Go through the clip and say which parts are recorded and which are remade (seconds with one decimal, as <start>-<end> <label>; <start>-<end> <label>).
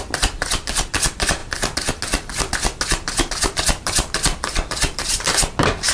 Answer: 0.0-1.4 remade; 1.4-3.3 recorded; 3.3-5.9 remade